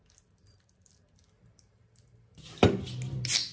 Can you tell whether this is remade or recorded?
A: recorded